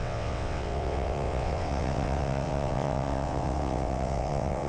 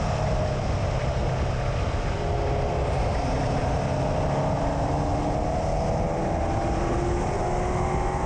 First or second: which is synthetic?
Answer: first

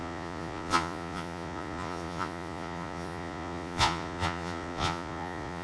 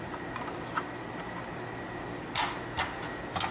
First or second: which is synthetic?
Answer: first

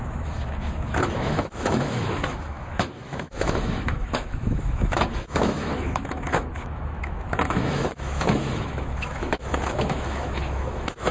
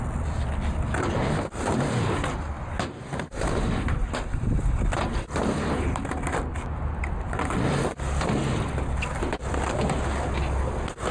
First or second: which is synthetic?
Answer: first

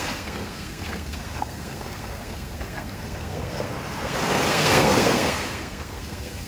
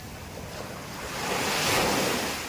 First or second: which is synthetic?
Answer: first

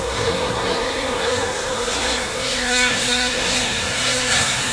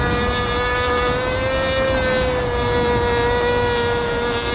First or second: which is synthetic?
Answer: first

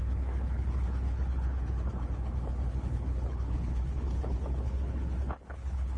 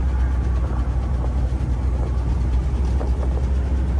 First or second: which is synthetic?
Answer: first